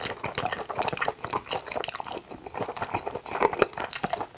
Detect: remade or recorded recorded